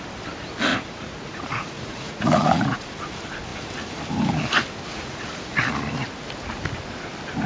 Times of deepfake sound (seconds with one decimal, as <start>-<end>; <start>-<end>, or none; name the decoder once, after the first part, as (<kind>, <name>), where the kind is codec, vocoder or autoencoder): 0.7-3.0 (vocoder, Vocos); 4.9-5.6